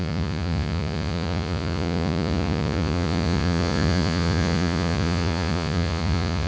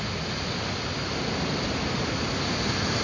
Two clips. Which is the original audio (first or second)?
second